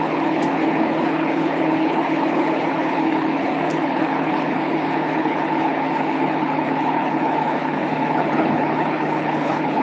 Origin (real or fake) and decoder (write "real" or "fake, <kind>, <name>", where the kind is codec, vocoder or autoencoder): fake, codec, HILCodec